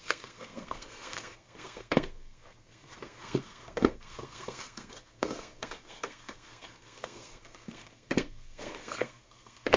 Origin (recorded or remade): remade